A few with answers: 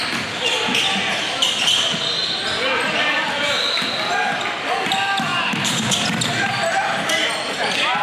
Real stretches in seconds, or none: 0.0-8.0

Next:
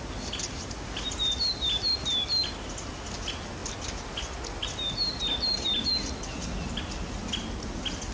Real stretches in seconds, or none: 0.0-8.1

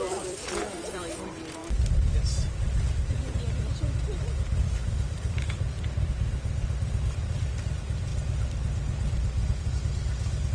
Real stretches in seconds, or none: 1.6-4.0; 8.1-10.5